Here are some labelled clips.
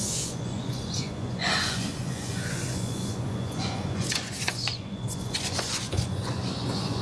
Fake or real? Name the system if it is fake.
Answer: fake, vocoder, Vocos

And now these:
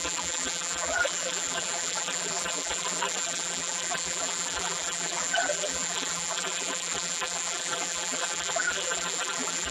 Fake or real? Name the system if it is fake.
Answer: fake, vocoder, BigVGAN v2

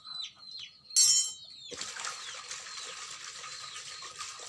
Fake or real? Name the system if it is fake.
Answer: real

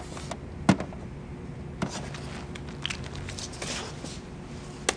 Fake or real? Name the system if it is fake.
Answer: real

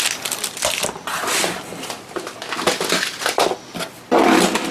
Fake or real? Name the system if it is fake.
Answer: real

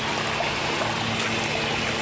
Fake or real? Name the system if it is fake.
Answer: real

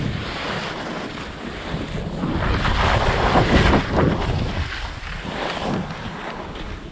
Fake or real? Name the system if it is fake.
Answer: real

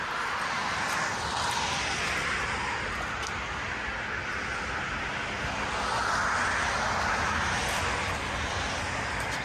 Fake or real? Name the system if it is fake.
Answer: real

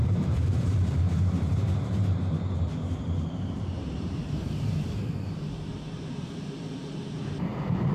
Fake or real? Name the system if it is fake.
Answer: fake, vocoder, BigVGAN v2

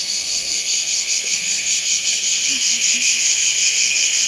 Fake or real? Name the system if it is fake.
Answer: fake, codec, SNAC